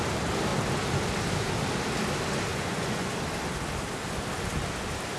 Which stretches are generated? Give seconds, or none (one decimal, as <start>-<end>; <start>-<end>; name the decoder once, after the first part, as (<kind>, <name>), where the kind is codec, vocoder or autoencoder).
2.5-3.1 (vocoder, Vocos)